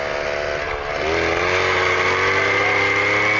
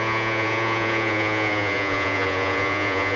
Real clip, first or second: first